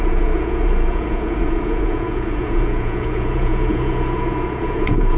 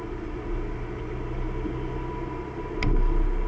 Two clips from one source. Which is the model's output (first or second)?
first